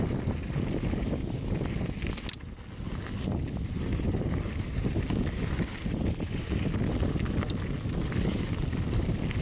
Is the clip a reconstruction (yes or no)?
no